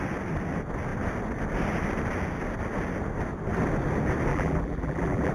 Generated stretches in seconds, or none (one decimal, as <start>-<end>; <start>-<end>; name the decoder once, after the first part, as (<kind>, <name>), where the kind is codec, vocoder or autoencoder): 4.3-5.3 (vocoder, BigVGAN v2)